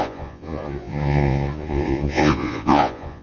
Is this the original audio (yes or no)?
no